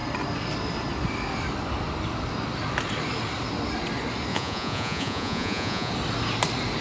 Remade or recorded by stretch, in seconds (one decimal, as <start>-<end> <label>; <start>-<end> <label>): 0.0-4.3 recorded; 4.3-5.9 remade; 5.9-6.8 recorded

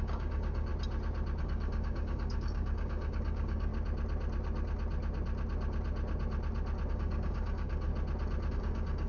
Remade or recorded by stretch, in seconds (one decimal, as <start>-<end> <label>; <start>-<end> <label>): 0.0-0.7 remade; 0.7-1.4 recorded; 1.4-3.7 remade; 3.7-6.9 recorded; 6.9-7.9 remade; 7.9-8.5 recorded; 8.5-9.1 remade

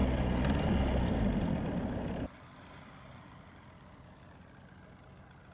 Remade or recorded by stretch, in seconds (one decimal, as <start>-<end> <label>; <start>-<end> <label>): 0.0-5.5 recorded

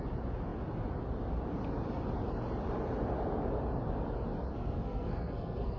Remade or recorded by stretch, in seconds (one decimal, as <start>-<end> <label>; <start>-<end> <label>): 0.0-4.5 recorded; 4.5-5.8 remade